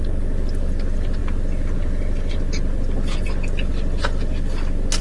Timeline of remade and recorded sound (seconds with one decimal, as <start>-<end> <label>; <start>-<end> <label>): 0.0-5.0 recorded